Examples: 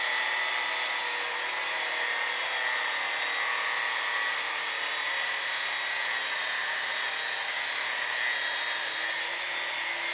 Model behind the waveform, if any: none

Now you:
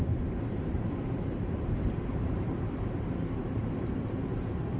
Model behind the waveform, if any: vocoder, BigVGAN v2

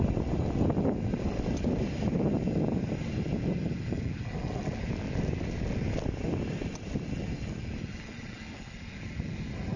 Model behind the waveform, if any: none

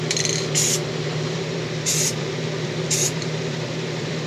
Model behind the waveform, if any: vocoder, BigVGAN v2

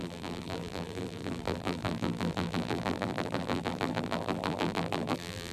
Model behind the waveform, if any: vocoder, BigVGAN v2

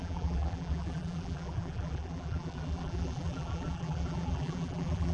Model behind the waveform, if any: vocoder, BigVGAN v2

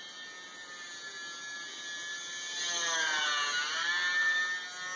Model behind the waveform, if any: none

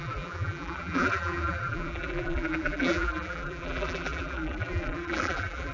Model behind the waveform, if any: vocoder, BigVGAN v2